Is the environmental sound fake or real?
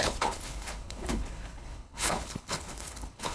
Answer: fake